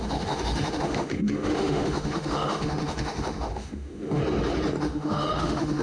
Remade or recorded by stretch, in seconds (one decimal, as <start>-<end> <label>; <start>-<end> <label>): 0.0-4.2 remade; 4.2-4.8 recorded; 4.8-5.8 remade